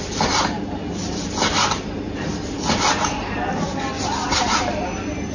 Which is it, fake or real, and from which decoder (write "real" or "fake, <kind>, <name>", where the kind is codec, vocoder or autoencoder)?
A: real